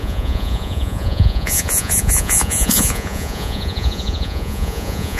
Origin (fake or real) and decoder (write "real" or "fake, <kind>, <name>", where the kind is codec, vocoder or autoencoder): fake, vocoder, Vocos